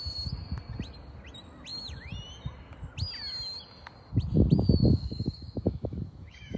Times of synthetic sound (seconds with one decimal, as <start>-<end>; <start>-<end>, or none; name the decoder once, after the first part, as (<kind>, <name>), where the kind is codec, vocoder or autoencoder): 4.8-6.6 (autoencoder, DAC-VAE)